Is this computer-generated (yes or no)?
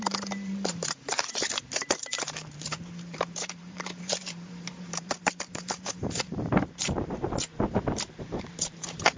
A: yes